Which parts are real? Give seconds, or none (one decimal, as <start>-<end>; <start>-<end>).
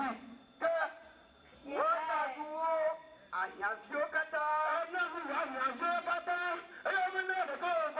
none